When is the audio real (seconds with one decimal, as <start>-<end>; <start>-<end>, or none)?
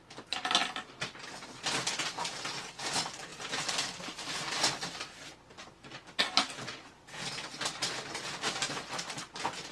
0.0-9.7